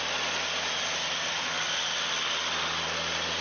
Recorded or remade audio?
recorded